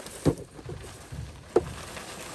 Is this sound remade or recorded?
recorded